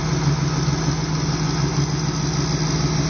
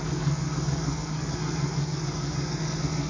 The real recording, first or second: first